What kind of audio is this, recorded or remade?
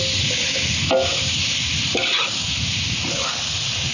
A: recorded